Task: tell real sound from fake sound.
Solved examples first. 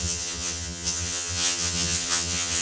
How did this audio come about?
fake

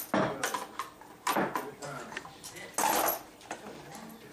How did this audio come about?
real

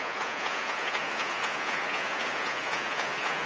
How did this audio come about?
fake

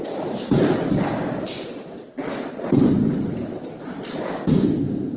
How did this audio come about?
real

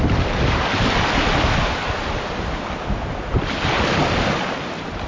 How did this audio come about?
real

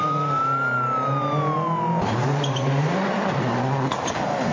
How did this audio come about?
real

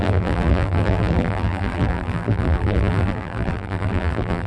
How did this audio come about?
fake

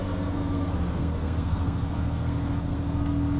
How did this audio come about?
fake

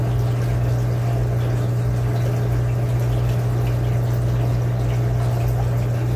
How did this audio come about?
real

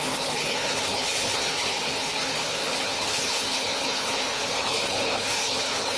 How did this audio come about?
fake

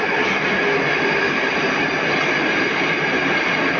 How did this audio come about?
real